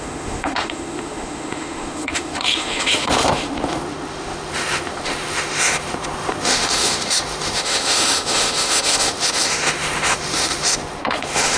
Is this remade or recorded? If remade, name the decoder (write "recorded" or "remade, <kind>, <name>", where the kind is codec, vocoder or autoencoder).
remade, autoencoder, DAC-VAE